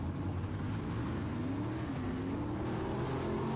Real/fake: real